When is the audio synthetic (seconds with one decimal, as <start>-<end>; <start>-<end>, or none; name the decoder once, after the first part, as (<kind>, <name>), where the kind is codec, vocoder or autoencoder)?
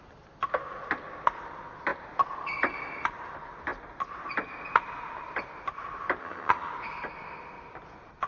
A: 6.2-6.7 (vocoder, HiFi-GAN)